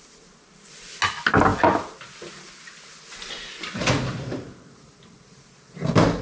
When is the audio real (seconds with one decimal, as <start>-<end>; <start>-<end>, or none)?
0.0-6.2

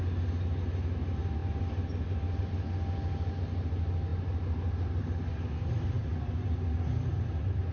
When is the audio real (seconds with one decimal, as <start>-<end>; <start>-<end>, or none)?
0.0-7.7